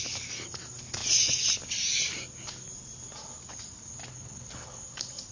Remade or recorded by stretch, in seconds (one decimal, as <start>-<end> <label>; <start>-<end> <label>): 0.0-4.0 recorded; 4.0-4.8 remade; 4.8-5.3 recorded